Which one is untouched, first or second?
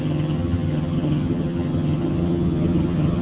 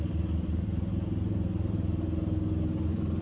second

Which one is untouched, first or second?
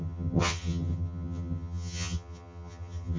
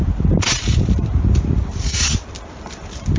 second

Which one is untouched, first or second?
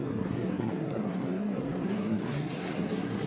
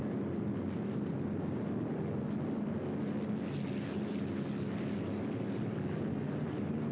second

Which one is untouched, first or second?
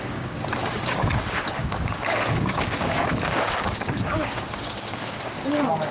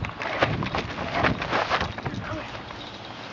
second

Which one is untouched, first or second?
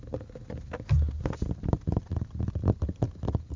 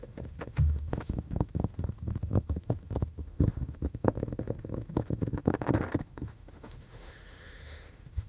first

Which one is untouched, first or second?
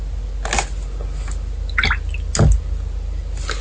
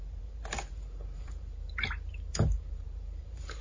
first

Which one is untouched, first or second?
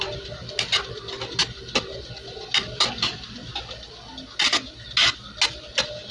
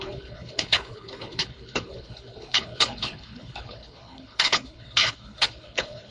first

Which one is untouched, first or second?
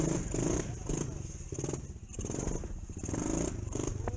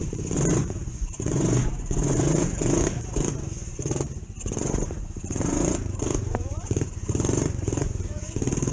first